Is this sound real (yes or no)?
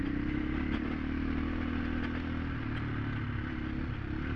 yes